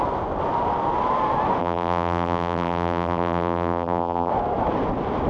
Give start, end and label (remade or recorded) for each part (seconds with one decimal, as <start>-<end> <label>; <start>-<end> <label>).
0.0-1.6 recorded; 1.6-4.3 remade; 4.3-5.3 recorded